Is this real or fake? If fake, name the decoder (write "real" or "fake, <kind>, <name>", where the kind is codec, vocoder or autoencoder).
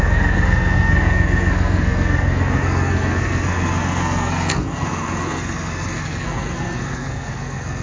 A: fake, codec, SNAC